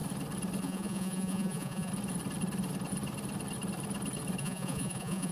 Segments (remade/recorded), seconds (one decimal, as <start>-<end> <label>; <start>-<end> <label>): 0.0-0.6 recorded; 0.6-1.9 remade; 1.9-4.4 recorded; 4.4-5.3 remade